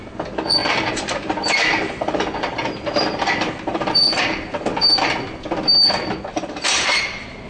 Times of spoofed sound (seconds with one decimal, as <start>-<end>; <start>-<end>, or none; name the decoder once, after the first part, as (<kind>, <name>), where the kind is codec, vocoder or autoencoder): 0.6-1.6 (vocoder, BigVGAN v2); 3.7-4.2; 6.3-7.0